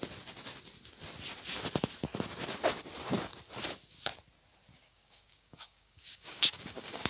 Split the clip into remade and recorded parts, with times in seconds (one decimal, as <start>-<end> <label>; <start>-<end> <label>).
0.0-4.7 recorded; 4.7-7.1 remade